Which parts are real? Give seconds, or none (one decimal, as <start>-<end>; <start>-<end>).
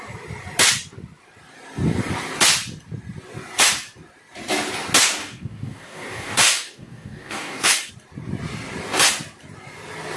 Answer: 0.0-5.2; 7.9-10.2